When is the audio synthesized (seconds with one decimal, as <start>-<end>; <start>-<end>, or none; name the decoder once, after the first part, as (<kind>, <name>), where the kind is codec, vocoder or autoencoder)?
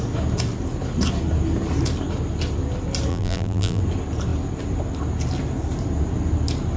3.1-3.8 (vocoder, BigVGAN v2)